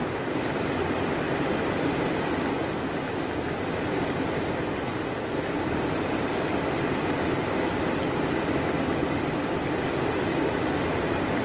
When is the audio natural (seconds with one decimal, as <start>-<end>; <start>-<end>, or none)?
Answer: 0.0-11.4